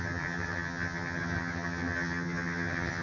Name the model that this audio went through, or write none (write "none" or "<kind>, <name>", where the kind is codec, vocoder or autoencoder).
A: vocoder, HiFi-GAN